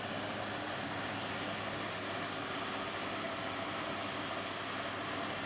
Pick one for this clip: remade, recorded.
recorded